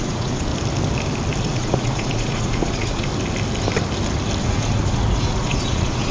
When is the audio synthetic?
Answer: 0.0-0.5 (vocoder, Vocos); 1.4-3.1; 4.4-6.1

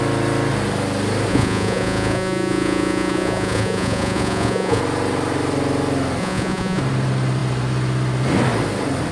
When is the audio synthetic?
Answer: 1.3-4.8 (vocoder, Vocos); 6.2-6.8